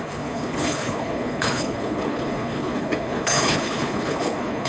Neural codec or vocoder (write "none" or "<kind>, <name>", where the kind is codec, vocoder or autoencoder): codec, HILCodec